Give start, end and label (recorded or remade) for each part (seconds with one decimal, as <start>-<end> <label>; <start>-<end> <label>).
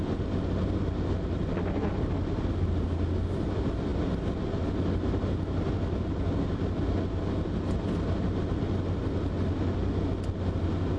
0.0-11.0 recorded